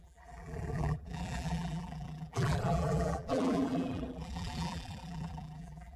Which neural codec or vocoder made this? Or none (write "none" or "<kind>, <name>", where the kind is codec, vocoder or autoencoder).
vocoder, BigVGAN v2